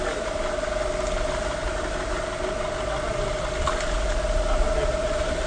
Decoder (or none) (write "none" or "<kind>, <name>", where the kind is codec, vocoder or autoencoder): none